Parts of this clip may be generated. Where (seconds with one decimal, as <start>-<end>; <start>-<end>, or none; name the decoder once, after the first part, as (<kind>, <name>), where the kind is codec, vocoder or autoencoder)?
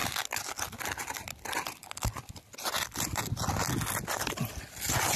none